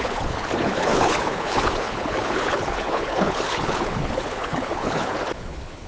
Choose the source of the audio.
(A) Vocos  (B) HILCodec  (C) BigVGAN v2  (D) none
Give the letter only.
B